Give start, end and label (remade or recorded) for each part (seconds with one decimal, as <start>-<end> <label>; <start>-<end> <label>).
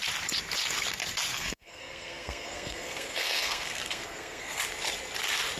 0.0-1.3 recorded; 1.3-4.6 remade; 4.6-5.6 recorded